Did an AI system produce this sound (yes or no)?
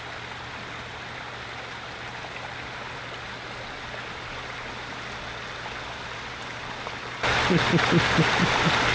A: no